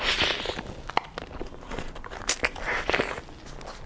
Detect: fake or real real